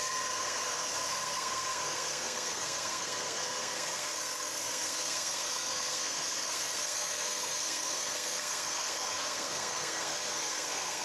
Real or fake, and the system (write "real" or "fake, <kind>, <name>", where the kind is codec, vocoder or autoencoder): fake, codec, SNAC